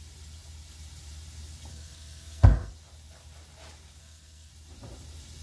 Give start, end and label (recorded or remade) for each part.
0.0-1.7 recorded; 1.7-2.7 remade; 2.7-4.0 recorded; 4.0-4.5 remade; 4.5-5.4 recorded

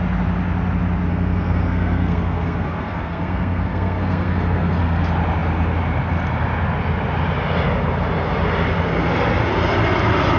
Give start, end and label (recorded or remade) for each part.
0.0-1.1 recorded; 1.1-5.0 remade; 5.0-10.4 recorded

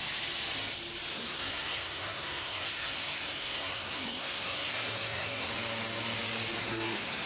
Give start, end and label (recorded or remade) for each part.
0.0-1.1 recorded; 1.1-5.5 remade; 5.5-6.6 recorded; 6.6-7.3 remade